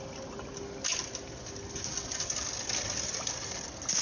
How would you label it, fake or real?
real